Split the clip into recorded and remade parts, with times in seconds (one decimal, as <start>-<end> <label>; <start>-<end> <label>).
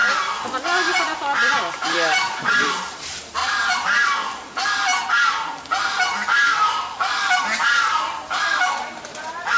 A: 0.0-1.7 recorded; 1.7-3.4 remade; 3.4-7.4 recorded; 7.4-9.6 remade